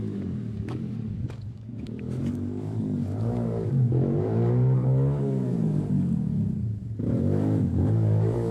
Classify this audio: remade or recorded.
remade